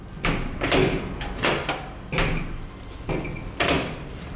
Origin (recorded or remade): recorded